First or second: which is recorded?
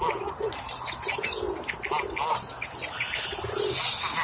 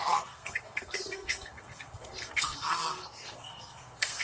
first